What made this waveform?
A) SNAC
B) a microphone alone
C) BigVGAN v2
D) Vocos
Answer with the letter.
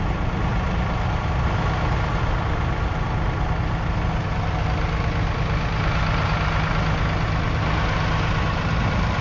B